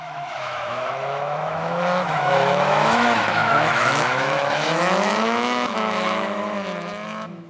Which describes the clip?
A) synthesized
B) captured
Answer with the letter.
A